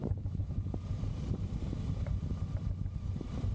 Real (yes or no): yes